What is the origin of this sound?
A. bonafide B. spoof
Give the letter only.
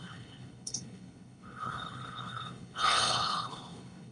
B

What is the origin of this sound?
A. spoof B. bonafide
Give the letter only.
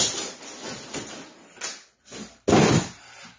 B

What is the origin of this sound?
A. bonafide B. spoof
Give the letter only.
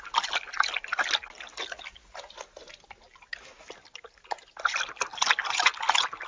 A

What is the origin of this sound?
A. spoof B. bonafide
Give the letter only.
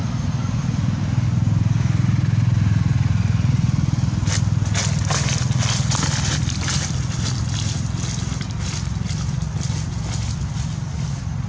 B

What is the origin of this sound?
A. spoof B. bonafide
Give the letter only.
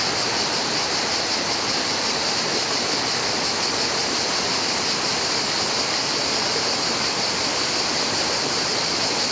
B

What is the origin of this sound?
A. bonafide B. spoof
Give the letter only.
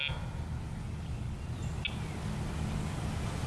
A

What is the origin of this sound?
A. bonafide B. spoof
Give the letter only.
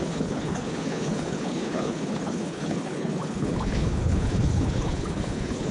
B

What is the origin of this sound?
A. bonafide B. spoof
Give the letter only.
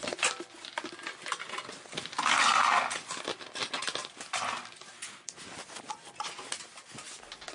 A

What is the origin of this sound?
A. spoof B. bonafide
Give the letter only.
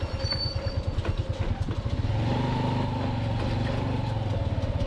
B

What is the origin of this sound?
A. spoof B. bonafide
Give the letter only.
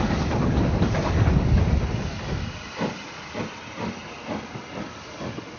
B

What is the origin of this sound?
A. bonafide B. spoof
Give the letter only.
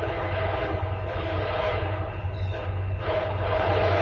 B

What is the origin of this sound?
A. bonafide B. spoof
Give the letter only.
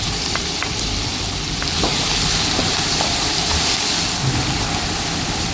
A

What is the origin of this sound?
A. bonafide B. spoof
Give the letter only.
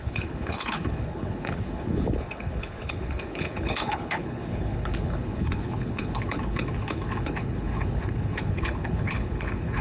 B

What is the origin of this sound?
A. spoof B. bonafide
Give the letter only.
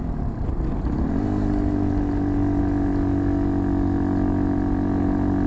B